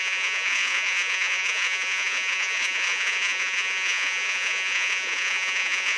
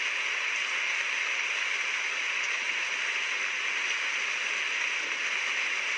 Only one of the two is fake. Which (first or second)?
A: first